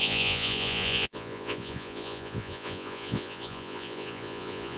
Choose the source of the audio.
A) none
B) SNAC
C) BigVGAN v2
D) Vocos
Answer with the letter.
D